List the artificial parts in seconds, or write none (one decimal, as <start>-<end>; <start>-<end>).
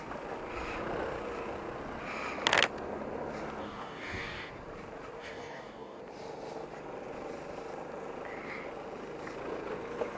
3.6-4.5; 5.2-6.0